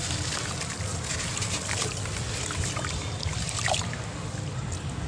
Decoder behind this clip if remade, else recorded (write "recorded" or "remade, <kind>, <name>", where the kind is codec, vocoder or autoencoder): recorded